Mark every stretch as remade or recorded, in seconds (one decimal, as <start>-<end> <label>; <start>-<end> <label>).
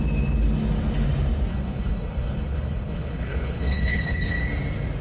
0.0-1.5 recorded; 1.5-4.3 remade; 4.3-5.0 recorded